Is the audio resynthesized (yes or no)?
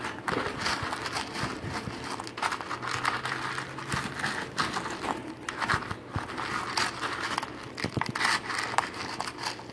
no